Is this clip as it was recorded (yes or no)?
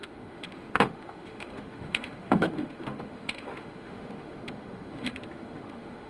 no